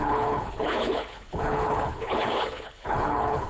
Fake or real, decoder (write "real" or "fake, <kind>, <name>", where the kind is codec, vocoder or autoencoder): fake, codec, HILCodec